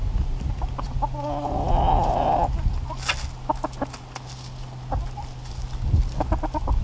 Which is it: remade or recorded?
recorded